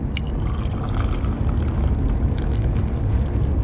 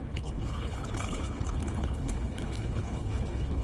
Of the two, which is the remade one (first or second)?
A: second